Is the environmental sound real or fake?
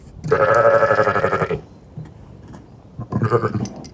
real